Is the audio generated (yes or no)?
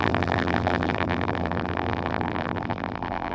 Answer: yes